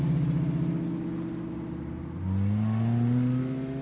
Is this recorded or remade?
recorded